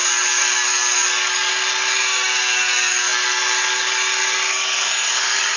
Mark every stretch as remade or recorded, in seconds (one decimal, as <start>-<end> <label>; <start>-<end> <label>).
0.0-5.6 remade